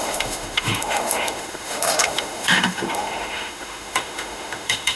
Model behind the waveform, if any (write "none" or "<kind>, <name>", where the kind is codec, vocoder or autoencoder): autoencoder, DAC-VAE